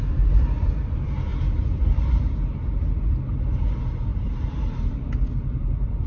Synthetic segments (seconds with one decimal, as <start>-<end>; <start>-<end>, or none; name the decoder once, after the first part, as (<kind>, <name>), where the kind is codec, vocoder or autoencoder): 1.3-3.1 (vocoder, BigVGAN v2); 4.1-4.9